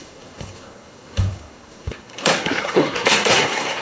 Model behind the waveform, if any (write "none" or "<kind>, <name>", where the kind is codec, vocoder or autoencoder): codec, SNAC